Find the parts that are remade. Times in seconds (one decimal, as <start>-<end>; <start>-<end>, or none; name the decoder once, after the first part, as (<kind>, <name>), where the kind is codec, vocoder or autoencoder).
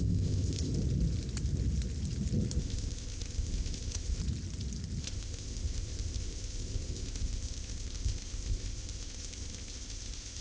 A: 0.0-0.7 (codec, ZipCodec); 2.6-4.2; 5.0-10.4